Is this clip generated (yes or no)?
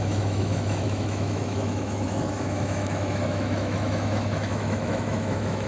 yes